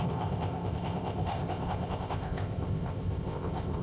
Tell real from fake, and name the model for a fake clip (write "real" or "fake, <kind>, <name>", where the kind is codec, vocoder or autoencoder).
fake, codec, ZipCodec